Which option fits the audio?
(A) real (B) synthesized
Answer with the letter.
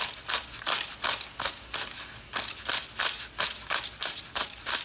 A